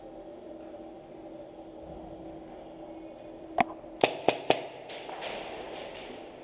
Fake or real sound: real